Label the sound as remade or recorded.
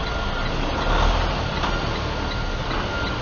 recorded